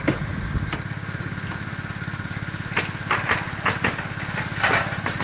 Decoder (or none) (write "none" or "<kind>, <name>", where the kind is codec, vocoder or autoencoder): none